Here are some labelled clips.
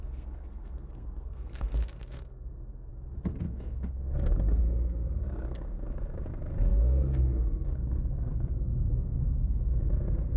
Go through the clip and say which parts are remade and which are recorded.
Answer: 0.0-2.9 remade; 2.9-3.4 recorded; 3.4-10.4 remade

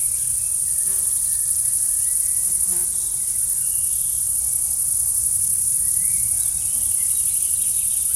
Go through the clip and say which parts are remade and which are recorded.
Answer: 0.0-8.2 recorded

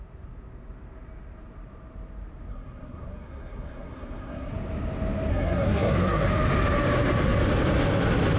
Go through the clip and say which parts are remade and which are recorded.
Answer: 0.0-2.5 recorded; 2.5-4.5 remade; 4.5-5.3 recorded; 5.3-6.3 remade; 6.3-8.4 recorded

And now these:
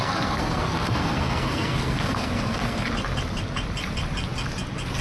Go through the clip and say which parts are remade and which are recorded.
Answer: 0.0-2.9 remade; 2.9-5.0 recorded

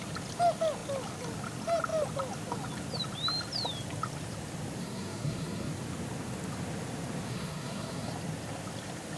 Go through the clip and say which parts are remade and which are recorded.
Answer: 0.0-4.8 recorded; 4.8-5.7 remade; 5.7-7.3 recorded; 7.3-8.1 remade; 8.1-9.2 recorded

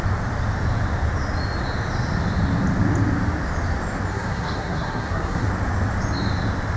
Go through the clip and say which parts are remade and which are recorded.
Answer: 0.0-4.1 recorded; 4.1-5.5 remade; 5.5-6.8 recorded